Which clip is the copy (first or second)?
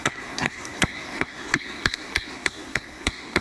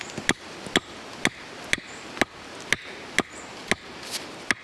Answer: first